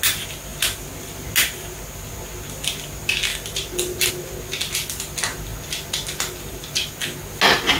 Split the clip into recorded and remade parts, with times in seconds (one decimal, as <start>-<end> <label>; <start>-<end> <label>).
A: 0.0-3.3 recorded; 3.3-4.1 remade; 4.1-5.5 recorded; 5.5-6.4 remade; 6.4-7.8 recorded